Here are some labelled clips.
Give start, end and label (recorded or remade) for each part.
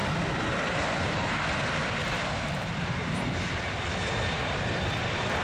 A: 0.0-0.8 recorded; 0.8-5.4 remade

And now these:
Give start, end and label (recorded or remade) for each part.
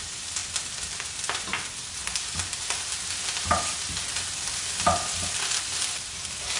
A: 0.0-6.6 recorded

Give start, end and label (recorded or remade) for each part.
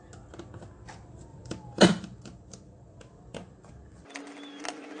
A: 0.0-1.3 recorded; 1.3-4.2 remade; 4.2-5.0 recorded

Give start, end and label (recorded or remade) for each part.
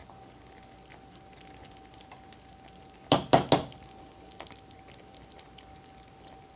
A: 0.0-4.0 recorded; 4.0-6.6 remade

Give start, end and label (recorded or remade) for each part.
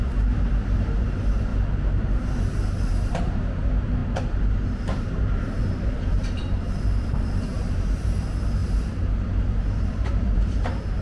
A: 0.0-1.5 remade; 1.5-2.7 recorded; 2.7-11.0 remade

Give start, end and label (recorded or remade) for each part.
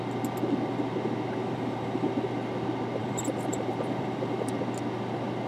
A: 0.0-1.4 recorded; 1.4-2.1 remade; 2.1-3.0 recorded; 3.0-4.5 remade; 4.5-5.5 recorded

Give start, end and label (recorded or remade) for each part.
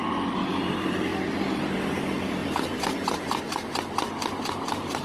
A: 0.0-2.4 recorded; 2.4-3.4 remade; 3.4-5.0 recorded